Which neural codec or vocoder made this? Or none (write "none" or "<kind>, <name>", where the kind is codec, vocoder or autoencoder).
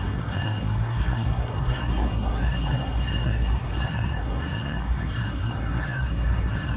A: codec, SNAC